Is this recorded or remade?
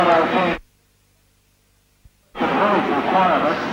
recorded